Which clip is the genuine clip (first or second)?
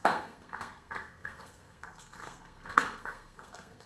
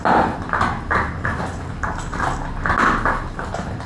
second